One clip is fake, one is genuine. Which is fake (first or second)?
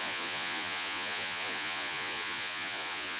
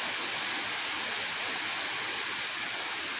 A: first